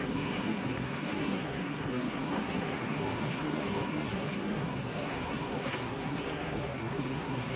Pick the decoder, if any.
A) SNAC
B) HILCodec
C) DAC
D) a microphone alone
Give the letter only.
A